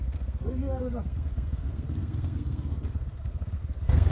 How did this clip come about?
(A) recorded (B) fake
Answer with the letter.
B